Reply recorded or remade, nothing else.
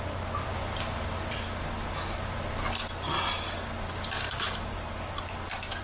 recorded